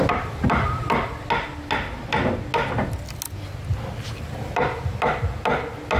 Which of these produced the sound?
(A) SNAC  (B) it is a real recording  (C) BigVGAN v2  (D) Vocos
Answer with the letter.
B